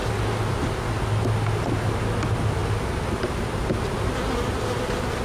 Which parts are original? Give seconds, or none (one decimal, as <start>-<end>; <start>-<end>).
0.0-5.2